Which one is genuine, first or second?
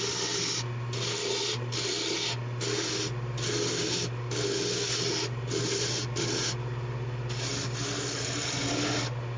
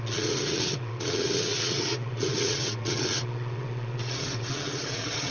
first